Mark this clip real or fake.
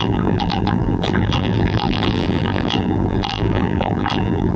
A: fake